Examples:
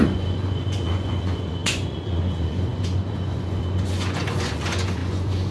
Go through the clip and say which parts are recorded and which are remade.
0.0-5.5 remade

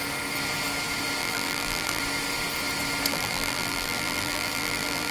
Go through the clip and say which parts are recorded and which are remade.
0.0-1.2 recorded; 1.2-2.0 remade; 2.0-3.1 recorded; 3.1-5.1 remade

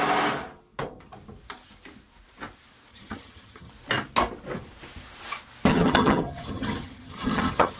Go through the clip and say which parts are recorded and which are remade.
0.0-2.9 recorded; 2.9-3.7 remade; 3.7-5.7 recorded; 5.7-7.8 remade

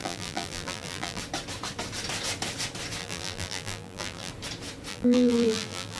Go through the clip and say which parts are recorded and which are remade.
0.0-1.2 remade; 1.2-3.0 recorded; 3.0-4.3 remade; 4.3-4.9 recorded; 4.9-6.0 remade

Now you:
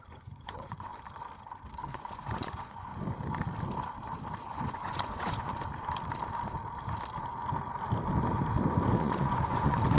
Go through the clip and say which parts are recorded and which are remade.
0.0-0.9 remade; 0.9-1.9 recorded; 1.9-2.9 remade; 2.9-4.4 recorded; 4.4-5.5 remade; 5.5-9.0 recorded; 9.0-10.0 remade

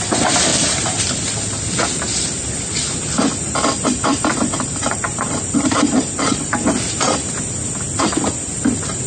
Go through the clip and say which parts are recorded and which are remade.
0.0-0.5 recorded; 0.5-1.0 remade; 1.0-4.1 recorded; 4.1-6.7 remade; 6.7-9.1 recorded